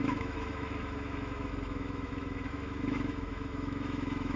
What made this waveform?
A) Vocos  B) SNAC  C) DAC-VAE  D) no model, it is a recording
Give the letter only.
C